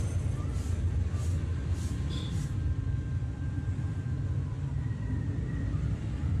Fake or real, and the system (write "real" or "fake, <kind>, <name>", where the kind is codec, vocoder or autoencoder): fake, vocoder, BigVGAN v2